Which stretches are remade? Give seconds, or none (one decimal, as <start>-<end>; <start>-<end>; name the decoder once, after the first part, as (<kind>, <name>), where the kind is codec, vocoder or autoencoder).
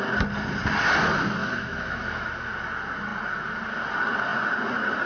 1.4-2.5 (autoencoder, DAC-VAE)